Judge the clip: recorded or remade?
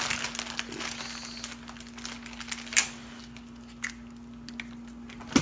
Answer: recorded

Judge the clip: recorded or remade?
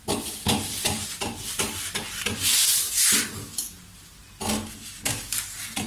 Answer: recorded